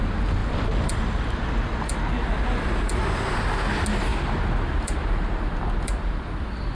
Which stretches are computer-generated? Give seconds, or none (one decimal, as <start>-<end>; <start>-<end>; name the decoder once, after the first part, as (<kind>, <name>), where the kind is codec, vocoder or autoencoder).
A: 0.4-3.0 (vocoder, BigVGAN v2); 4.1-6.7